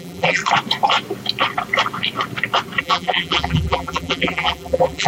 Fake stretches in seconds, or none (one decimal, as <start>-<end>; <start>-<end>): 0.0-0.4; 2.8-5.1